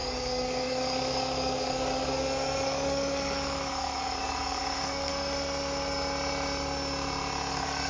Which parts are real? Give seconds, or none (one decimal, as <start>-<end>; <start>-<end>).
5.1-7.5